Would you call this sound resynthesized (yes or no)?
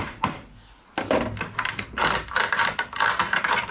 no